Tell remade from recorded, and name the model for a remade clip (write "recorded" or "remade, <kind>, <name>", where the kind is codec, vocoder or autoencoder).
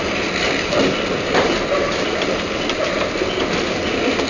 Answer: recorded